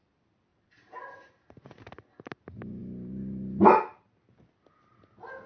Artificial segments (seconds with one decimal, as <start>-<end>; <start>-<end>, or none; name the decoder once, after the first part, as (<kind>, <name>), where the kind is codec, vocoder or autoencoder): 0.5-1.3 (vocoder, BigVGAN v2)